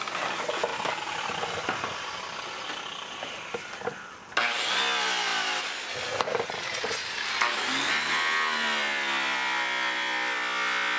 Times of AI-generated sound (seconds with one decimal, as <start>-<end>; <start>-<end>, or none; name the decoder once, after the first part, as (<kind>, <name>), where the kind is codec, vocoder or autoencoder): none